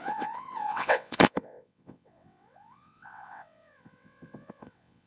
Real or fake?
fake